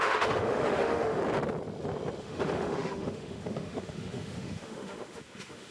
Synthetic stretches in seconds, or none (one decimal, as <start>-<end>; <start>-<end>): 0.0-1.2; 2.2-5.7